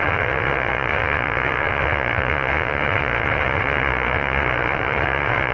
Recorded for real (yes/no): no